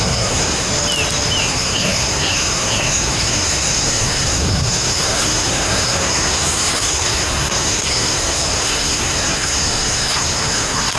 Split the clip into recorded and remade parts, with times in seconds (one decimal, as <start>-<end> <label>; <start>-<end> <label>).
0.0-0.7 remade; 0.7-1.4 recorded; 1.4-11.0 remade

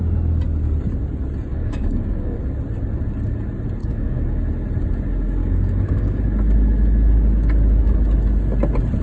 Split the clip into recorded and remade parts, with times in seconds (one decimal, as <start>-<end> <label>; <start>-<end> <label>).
0.0-1.5 recorded; 1.5-2.4 remade; 2.4-3.8 recorded; 3.8-4.4 remade; 4.4-5.4 recorded; 5.4-6.2 remade; 6.2-9.0 recorded